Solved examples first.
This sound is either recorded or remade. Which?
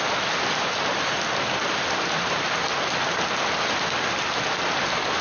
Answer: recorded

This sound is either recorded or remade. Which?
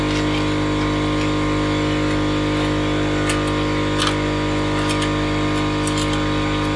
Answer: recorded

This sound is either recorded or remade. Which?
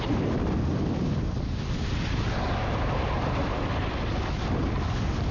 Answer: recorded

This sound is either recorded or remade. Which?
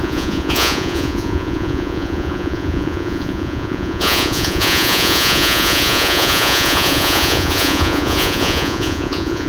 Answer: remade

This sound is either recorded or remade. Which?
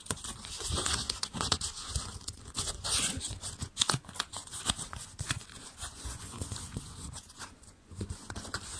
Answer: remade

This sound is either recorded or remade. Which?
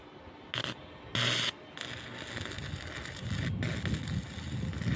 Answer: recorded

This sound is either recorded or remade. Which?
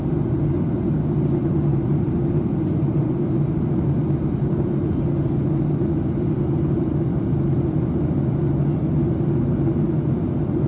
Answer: recorded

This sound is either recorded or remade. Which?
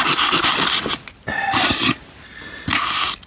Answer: recorded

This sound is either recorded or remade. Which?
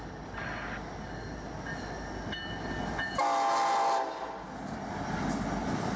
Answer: recorded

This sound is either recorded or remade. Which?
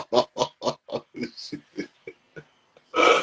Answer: recorded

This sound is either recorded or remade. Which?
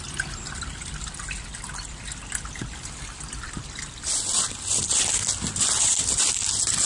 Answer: recorded